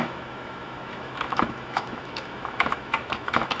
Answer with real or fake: fake